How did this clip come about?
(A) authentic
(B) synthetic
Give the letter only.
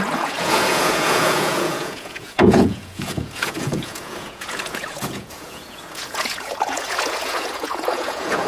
B